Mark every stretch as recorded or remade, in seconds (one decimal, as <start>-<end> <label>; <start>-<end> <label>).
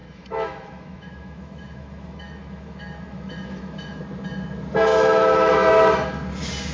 0.0-4.0 remade; 4.0-4.9 recorded; 4.9-5.5 remade; 5.5-6.7 recorded